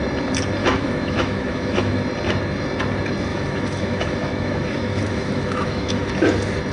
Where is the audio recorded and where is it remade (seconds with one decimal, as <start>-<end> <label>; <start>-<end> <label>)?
0.0-0.6 recorded; 0.6-2.0 remade; 2.0-3.3 recorded; 3.3-6.1 remade; 6.1-6.7 recorded